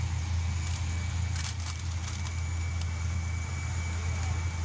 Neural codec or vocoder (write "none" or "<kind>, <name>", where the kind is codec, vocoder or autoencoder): none